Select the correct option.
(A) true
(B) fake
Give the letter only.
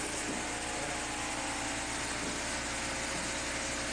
A